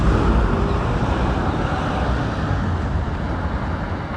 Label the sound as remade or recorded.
recorded